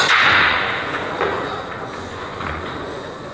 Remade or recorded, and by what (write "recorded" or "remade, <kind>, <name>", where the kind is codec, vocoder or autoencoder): remade, vocoder, Vocos